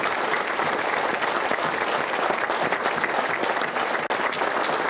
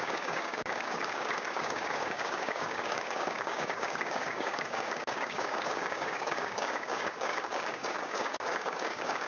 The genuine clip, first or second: first